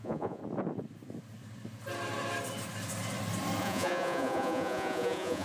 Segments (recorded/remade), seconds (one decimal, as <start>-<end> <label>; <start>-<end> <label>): 0.0-0.4 remade; 0.4-3.6 recorded; 3.6-5.4 remade